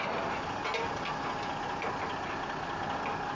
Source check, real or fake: real